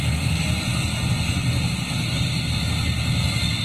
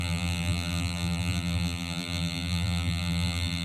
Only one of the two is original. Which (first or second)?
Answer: first